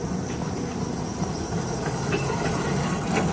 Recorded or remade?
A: remade